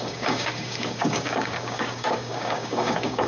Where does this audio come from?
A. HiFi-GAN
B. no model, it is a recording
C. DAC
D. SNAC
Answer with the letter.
C